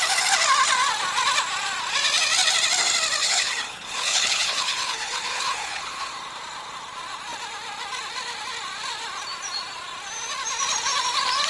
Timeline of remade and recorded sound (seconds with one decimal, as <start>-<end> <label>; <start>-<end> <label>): 0.0-3.2 recorded; 3.2-6.1 remade; 6.1-11.5 recorded